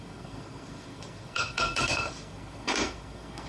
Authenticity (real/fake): fake